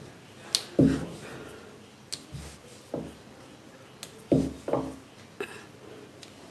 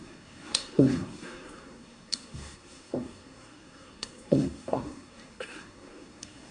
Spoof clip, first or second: second